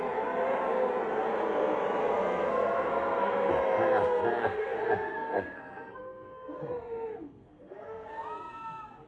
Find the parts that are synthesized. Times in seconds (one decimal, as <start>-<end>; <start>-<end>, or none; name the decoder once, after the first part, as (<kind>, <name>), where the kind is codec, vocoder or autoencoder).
2.0-3.5 (codec, SNAC); 4.4-8.1